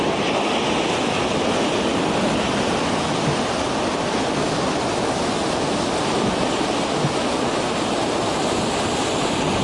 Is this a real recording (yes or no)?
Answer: yes